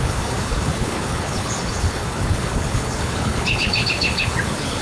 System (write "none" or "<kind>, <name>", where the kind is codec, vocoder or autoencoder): codec, HILCodec